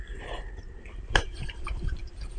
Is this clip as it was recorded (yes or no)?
no